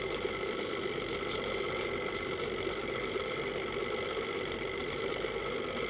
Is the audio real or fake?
real